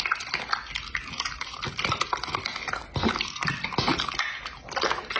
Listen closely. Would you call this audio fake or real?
real